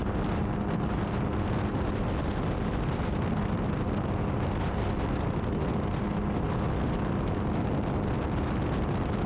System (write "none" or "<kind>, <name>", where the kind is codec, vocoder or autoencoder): none